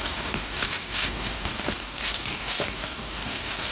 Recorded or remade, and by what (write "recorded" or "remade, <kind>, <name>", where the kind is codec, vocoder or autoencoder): remade, codec, DAC